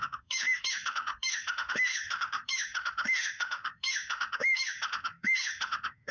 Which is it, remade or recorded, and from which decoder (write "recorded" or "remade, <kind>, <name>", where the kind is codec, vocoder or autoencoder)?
remade, autoencoder, DAC-VAE